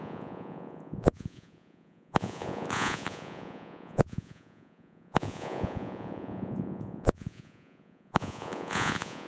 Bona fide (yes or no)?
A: no